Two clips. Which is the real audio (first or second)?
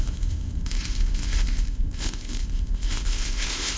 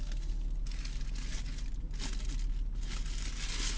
second